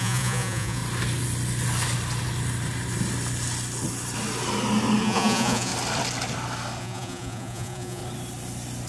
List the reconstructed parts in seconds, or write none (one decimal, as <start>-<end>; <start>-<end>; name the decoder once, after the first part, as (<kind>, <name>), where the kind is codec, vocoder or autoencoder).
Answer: 0.0-0.8 (vocoder, Vocos); 5.0-5.7; 6.8-8.0